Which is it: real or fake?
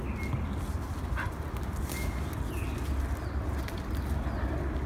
real